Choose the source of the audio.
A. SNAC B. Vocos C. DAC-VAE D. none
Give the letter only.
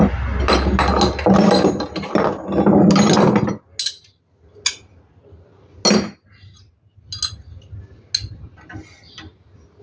D